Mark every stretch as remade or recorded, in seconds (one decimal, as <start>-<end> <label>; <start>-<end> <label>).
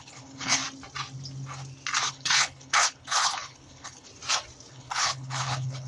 0.0-0.6 remade; 0.6-2.1 recorded; 2.1-4.1 remade; 4.1-4.7 recorded; 4.7-5.9 remade